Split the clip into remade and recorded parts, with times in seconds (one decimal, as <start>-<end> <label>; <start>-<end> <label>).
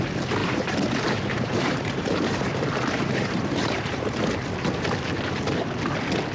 0.0-0.4 recorded; 0.4-4.2 remade; 4.2-6.3 recorded